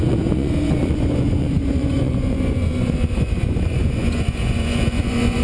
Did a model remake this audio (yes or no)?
yes